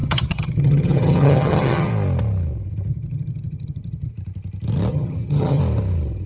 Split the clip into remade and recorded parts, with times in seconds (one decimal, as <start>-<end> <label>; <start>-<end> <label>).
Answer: 0.0-1.9 remade; 1.9-2.9 recorded; 2.9-4.1 remade; 4.1-4.9 recorded; 4.9-5.6 remade; 5.6-6.3 recorded